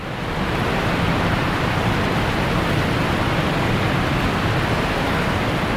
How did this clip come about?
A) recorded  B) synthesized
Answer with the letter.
A